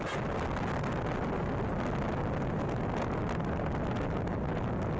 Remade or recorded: recorded